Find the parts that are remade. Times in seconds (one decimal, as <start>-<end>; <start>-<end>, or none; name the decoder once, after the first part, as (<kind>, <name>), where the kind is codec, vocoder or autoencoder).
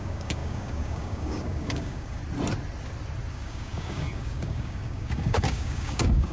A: 0.0-2.2 (codec, DAC); 3.3-6.3